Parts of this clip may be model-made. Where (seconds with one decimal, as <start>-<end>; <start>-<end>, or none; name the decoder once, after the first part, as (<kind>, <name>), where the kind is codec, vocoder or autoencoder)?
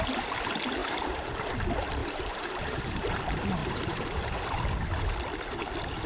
0.8-1.3 (vocoder, BigVGAN v2); 2.0-3.0; 3.6-4.2